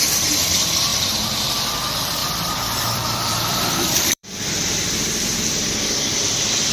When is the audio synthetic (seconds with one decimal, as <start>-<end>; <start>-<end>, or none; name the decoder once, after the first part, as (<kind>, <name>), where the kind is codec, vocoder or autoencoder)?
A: 0.9-1.5 (vocoder, BigVGAN v2); 2.2-6.2